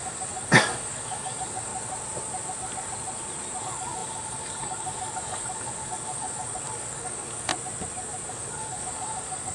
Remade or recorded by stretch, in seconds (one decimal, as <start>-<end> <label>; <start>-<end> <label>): 0.0-1.7 remade; 1.7-3.6 recorded; 3.6-7.5 remade; 7.5-8.3 recorded; 8.3-9.5 remade